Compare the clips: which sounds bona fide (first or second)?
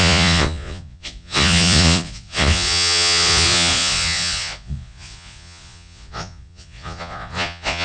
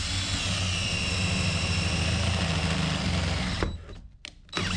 second